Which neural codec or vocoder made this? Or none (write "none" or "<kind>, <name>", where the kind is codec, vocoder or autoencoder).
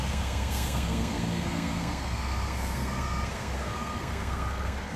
codec, SNAC